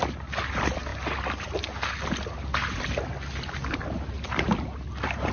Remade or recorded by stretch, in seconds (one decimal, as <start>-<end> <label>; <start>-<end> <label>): 0.0-5.3 recorded